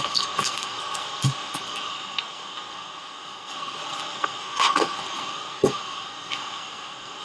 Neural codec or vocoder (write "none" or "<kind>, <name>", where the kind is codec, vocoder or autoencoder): codec, SNAC